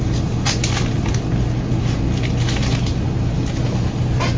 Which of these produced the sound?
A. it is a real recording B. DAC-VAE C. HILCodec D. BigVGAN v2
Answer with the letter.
A